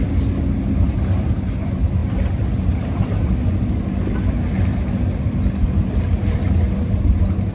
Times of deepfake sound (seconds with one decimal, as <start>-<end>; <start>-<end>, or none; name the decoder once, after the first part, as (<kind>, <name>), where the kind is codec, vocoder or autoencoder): none